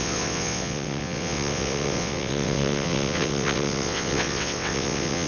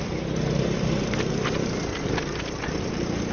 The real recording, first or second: second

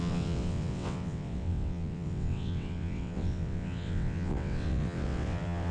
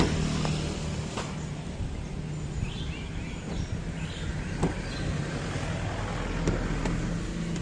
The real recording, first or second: second